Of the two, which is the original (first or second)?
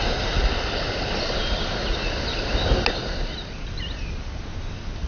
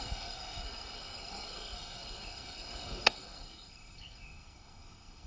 first